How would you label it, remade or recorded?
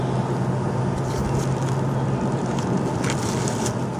recorded